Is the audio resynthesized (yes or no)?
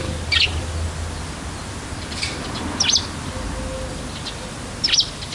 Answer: no